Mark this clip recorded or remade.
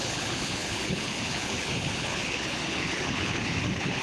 remade